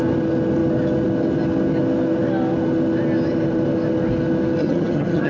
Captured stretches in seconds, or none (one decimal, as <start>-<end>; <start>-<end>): 0.0-4.6